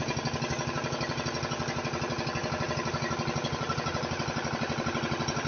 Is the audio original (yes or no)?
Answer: yes